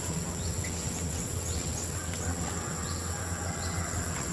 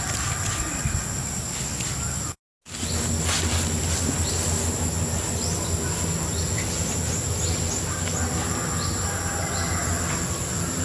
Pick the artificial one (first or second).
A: first